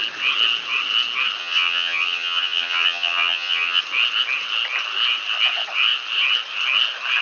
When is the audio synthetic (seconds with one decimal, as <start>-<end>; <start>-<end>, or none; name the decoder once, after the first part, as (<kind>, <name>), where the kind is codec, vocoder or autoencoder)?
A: 1.4-3.8 (vocoder, HiFi-GAN)